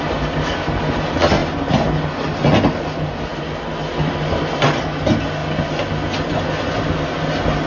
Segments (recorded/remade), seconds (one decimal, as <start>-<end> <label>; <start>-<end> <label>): 0.0-7.7 recorded